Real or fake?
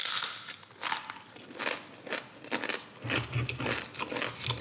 real